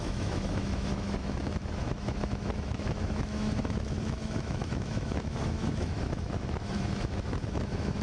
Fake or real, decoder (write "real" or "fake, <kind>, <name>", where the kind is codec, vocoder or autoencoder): fake, autoencoder, DAC-VAE